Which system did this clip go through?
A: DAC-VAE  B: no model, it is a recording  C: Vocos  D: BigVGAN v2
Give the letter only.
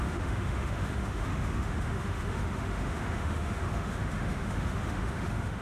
A